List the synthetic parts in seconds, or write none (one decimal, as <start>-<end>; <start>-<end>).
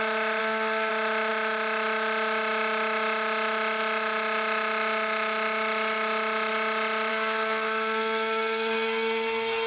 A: 0.4-0.9; 7.1-9.7